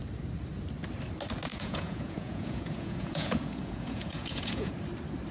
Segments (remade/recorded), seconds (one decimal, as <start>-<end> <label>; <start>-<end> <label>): 0.0-1.5 recorded; 1.5-4.7 remade; 4.7-5.3 recorded